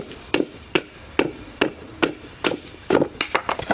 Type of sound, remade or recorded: recorded